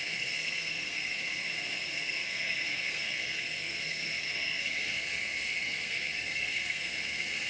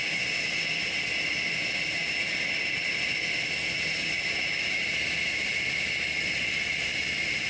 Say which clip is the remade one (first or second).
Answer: first